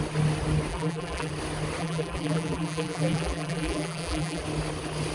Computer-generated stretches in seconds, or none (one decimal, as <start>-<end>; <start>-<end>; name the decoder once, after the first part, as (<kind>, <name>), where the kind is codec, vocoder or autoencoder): 0.7-1.3 (vocoder, BigVGAN v2); 1.8-4.4